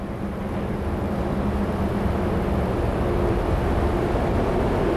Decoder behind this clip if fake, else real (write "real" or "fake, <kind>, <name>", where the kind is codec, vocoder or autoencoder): real